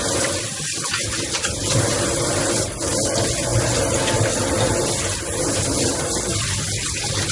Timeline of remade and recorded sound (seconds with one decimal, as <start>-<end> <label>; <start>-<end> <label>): 0.0-7.3 recorded